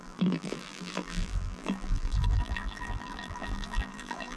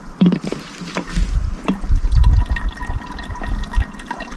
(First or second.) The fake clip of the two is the first